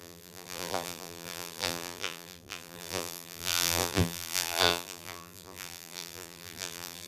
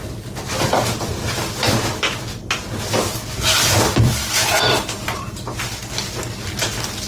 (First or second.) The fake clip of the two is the first